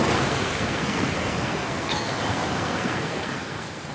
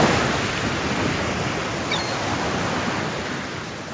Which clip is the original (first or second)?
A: second